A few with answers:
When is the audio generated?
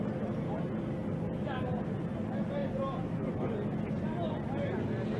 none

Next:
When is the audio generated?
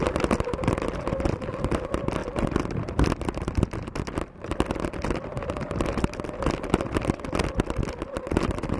none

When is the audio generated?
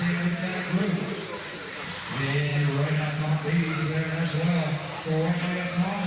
0.5-1.8 (vocoder, BigVGAN v2); 2.5-3.5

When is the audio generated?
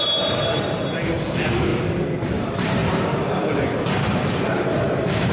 0.0-1.7 (vocoder, BigVGAN v2); 2.2-5.3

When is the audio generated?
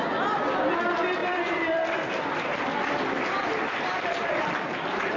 1.2-4.3 (vocoder, BigVGAN v2)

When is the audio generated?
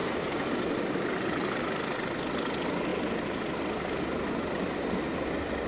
2.9-5.0 (vocoder, BigVGAN v2)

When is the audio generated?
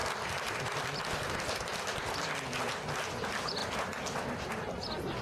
none